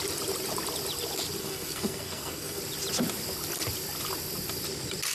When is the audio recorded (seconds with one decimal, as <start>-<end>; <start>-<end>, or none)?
0.0-1.4; 2.6-5.1